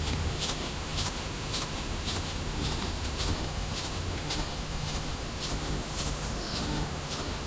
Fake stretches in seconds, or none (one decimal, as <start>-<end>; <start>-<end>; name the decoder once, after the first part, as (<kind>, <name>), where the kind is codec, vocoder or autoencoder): 0.0-7.5 (autoencoder, DAC-VAE)